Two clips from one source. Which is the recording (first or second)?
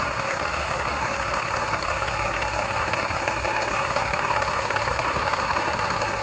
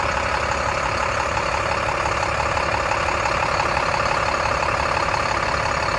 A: second